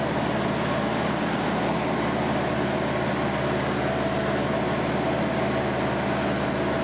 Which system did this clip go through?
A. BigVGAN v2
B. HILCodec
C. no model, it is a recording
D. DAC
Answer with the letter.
C